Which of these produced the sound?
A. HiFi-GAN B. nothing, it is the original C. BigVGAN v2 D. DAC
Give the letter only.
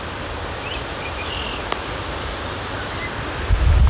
B